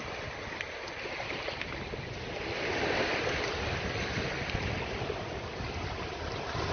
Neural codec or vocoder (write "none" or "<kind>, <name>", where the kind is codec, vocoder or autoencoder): none